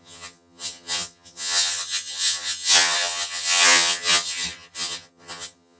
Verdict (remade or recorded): remade